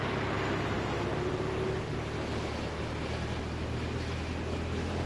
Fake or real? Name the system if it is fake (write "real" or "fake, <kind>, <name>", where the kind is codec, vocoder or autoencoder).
real